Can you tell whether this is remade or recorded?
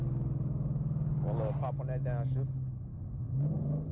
recorded